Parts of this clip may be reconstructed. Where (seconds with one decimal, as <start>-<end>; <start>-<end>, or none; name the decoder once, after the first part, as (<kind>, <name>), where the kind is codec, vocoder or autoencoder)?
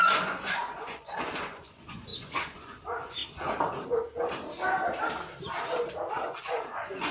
0.0-3.2 (vocoder, Vocos); 6.1-7.1